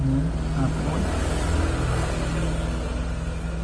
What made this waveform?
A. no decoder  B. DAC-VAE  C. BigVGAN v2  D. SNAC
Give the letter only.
A